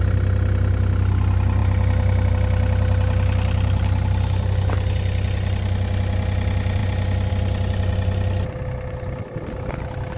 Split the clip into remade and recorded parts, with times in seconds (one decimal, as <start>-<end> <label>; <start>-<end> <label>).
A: 0.0-10.2 recorded